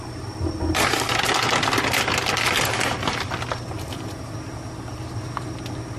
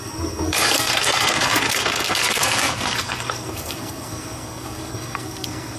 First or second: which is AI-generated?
second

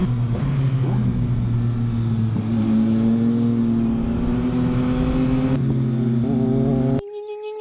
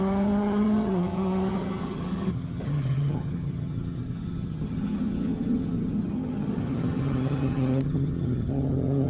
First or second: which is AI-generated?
second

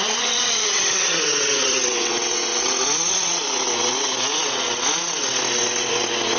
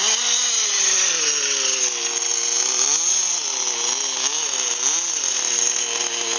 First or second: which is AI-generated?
first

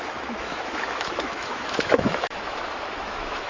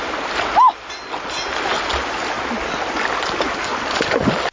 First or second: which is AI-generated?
first